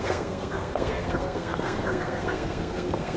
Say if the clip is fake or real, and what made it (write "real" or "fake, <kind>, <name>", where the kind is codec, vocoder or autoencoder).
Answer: fake, codec, SNAC